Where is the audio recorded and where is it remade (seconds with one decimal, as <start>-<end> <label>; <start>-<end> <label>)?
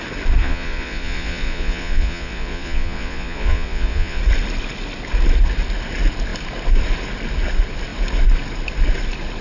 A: 0.0-0.4 recorded; 0.4-4.2 remade; 4.2-9.4 recorded